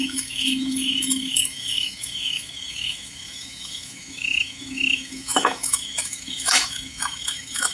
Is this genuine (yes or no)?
no